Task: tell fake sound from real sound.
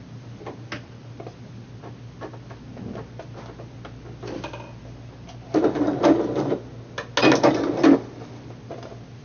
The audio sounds real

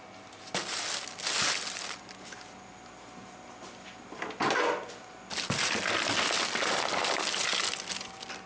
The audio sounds real